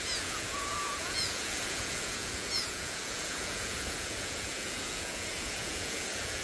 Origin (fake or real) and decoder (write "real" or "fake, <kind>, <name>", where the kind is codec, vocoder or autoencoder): fake, vocoder, Vocos